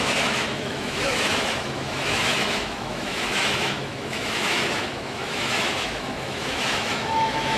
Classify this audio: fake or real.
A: fake